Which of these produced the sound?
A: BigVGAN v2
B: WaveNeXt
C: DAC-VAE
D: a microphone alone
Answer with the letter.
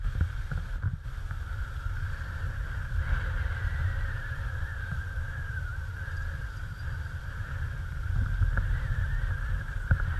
D